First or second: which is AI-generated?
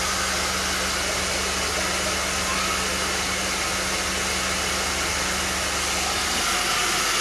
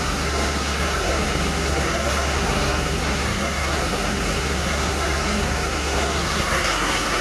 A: second